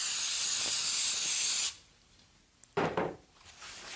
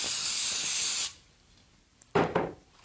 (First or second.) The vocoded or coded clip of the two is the second